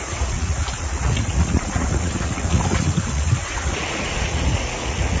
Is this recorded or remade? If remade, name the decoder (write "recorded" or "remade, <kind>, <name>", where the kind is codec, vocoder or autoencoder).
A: remade, vocoder, Vocos